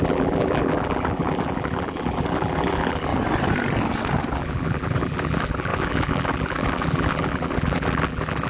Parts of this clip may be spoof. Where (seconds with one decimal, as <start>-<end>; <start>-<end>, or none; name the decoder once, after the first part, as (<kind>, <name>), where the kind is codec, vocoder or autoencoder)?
0.0-3.1 (vocoder, BigVGAN v2); 4.3-8.5